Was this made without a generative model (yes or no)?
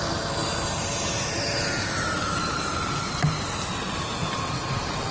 no